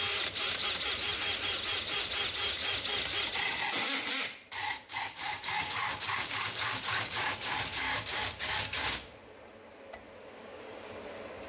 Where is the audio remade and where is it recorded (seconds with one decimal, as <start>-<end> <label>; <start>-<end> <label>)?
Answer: 0.0-4.6 recorded; 4.6-9.2 remade; 9.2-10.2 recorded; 10.2-11.0 remade; 11.0-11.5 recorded